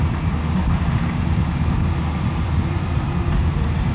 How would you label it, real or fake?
fake